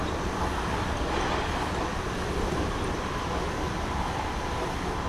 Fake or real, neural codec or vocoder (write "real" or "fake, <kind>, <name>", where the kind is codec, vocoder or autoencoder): real